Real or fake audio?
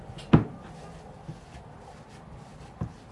real